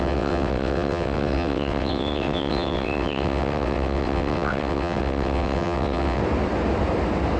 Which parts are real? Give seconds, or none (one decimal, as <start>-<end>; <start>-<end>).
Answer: 6.2-7.4